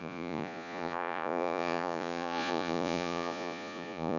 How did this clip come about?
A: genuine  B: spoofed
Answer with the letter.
B